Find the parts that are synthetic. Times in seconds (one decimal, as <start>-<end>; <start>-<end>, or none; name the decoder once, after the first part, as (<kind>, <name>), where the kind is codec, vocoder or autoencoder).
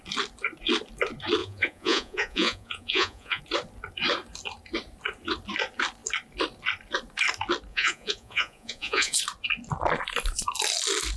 1.4-3.4 (vocoder, Vocos); 7.7-9.2